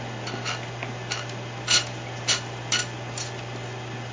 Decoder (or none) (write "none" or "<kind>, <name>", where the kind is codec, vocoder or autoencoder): none